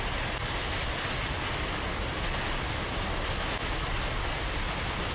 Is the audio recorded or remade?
recorded